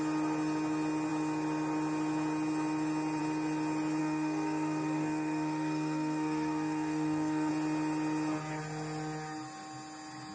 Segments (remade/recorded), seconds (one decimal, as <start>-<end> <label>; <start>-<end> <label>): 0.0-4.0 recorded; 4.0-7.5 remade; 7.5-10.3 recorded